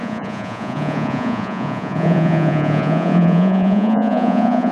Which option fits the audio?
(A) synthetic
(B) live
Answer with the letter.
A